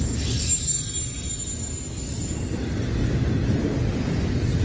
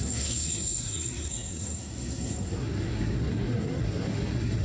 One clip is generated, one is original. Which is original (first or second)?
first